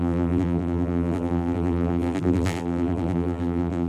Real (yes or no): no